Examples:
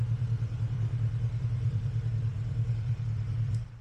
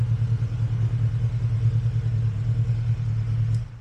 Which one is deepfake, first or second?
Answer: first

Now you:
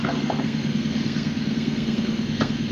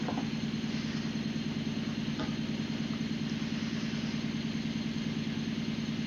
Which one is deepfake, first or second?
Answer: first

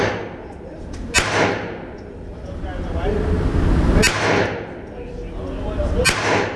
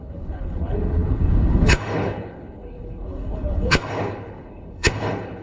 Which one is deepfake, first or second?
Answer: second